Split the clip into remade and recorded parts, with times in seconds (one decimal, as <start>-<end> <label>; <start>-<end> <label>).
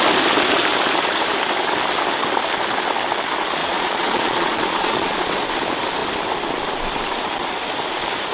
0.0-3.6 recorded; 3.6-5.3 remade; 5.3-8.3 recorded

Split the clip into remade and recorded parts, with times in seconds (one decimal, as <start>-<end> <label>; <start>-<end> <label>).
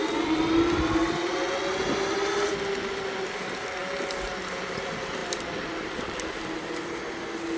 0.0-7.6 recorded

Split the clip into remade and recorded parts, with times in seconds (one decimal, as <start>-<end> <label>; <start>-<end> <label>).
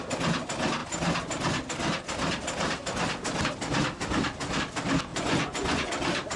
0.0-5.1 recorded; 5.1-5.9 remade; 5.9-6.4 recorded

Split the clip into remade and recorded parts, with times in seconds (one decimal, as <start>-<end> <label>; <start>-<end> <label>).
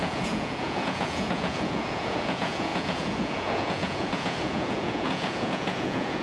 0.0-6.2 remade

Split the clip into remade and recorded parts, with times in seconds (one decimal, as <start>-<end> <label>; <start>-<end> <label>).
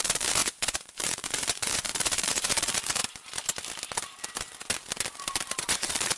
0.0-3.0 remade; 3.0-5.6 recorded; 5.6-6.2 remade